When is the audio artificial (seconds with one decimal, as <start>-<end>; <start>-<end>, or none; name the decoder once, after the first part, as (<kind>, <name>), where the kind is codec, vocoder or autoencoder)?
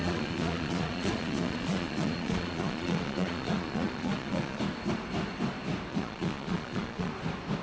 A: 0.0-4.6 (vocoder, Vocos); 5.9-7.1